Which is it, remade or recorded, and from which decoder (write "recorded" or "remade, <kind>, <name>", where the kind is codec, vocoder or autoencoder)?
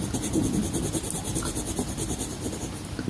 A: recorded